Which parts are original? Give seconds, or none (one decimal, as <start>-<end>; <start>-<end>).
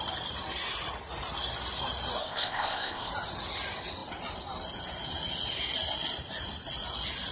0.0-2.2; 3.1-7.3